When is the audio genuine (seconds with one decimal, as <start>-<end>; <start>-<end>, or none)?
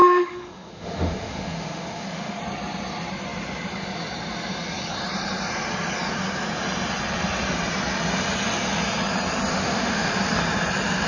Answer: 2.4-9.5; 10.1-11.1